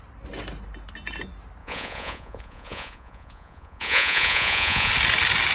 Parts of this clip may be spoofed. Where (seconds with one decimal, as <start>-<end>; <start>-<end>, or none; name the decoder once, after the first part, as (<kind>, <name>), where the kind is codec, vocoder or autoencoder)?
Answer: 1.6-4.9 (vocoder, Vocos)